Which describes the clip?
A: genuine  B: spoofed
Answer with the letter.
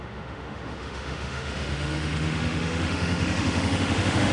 B